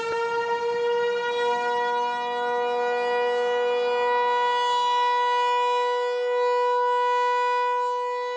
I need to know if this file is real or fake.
real